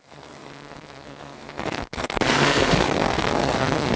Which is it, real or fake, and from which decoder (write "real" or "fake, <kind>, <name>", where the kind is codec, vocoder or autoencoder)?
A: fake, codec, SNAC